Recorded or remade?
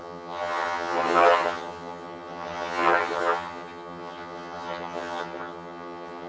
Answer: remade